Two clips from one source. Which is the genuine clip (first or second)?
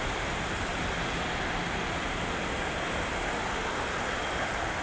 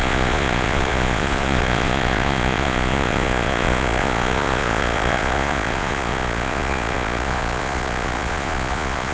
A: first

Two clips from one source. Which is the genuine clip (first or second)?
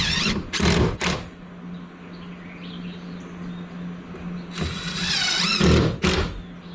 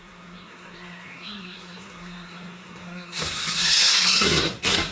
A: first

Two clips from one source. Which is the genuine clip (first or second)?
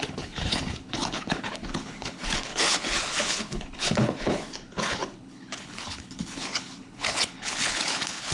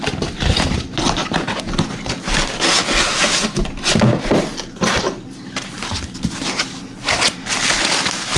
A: second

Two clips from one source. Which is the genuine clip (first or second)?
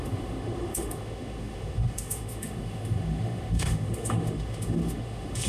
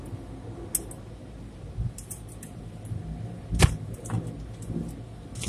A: second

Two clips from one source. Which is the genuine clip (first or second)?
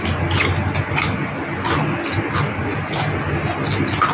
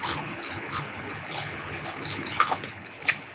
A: first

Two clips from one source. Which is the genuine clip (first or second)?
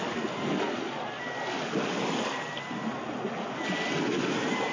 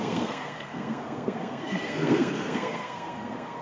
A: first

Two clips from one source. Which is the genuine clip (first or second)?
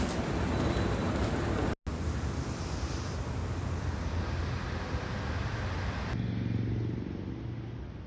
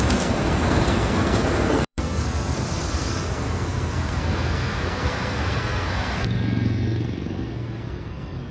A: first